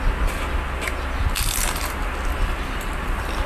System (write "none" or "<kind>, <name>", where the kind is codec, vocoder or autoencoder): none